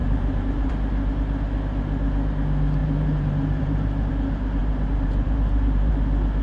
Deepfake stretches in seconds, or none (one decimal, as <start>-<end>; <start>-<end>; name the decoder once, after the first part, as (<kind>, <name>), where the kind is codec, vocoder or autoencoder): 0.0-0.7 (vocoder, BigVGAN v2); 2.8-4.1; 4.6-5.9